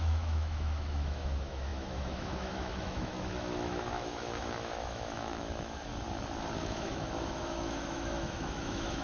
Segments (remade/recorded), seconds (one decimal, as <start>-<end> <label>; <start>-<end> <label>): 0.0-5.9 remade; 5.9-6.6 recorded; 6.6-9.0 remade